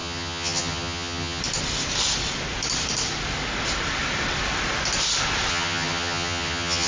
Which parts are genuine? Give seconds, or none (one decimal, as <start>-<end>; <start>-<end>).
1.4-5.5